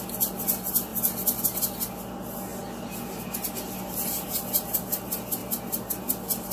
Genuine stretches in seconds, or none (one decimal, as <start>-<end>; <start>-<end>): 0.0-6.5